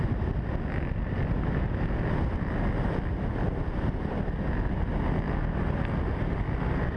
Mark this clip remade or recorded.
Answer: recorded